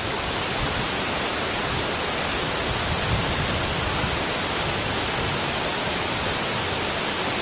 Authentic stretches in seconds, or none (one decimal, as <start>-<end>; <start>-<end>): 0.0-7.4